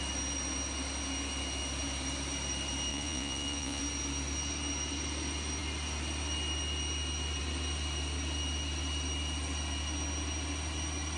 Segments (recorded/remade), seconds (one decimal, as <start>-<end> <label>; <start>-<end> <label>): 0.0-2.9 recorded; 2.9-3.8 remade; 3.8-11.2 recorded